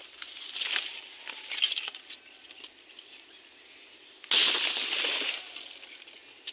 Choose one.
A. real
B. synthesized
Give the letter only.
A